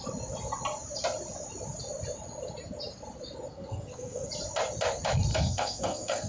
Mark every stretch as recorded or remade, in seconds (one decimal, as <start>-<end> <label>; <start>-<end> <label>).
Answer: 0.0-3.5 recorded; 3.5-4.3 remade; 4.3-5.3 recorded; 5.3-6.3 remade

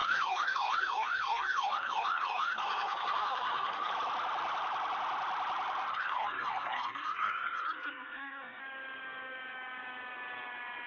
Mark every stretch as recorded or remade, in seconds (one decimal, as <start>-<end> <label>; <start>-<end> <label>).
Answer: 0.0-3.9 remade; 3.9-5.9 recorded; 5.9-8.6 remade; 8.6-10.9 recorded